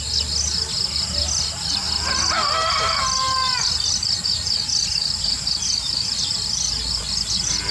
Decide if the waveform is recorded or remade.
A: recorded